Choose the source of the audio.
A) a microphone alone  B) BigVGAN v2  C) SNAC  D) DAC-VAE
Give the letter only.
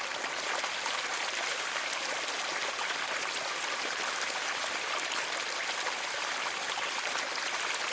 A